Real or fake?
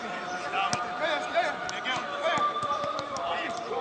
real